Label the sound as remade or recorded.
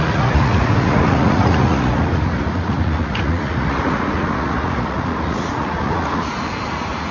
remade